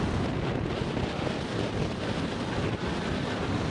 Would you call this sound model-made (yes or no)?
no